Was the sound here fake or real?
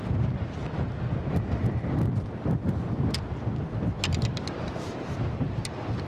real